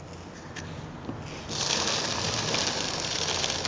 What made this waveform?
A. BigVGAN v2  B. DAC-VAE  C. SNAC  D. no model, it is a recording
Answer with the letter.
D